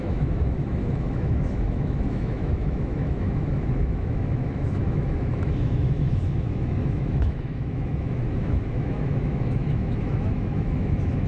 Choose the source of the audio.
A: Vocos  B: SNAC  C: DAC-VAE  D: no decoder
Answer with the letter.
C